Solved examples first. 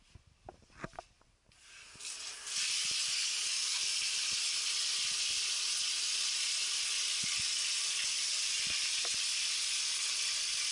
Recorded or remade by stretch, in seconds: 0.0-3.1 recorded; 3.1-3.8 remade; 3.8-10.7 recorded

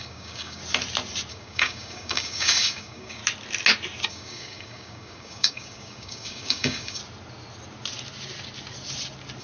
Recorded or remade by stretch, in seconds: 0.0-0.6 remade; 0.6-1.3 recorded; 1.3-3.2 remade; 3.2-4.1 recorded; 4.1-7.0 remade; 7.0-9.4 recorded

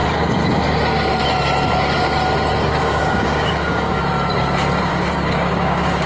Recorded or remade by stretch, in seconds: 0.0-2.6 recorded; 2.6-4.0 remade; 4.0-4.9 recorded; 4.9-6.1 remade